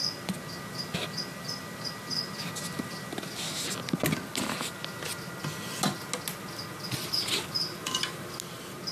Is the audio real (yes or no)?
yes